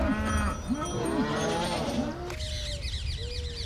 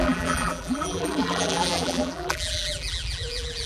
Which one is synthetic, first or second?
second